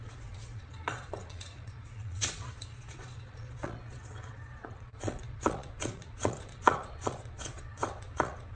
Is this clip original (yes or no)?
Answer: no